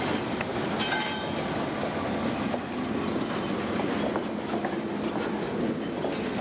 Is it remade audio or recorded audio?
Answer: recorded